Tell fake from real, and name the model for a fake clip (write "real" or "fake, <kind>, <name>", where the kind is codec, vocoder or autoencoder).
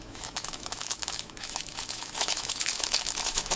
fake, autoencoder, DAC-VAE